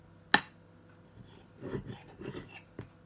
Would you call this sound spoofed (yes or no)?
no